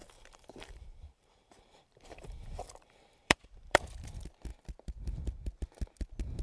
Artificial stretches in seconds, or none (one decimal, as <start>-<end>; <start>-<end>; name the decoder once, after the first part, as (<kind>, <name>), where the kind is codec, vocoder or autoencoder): 0.0-3.8 (vocoder, BigVGAN v2)